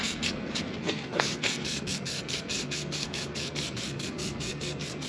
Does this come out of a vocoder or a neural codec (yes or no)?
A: yes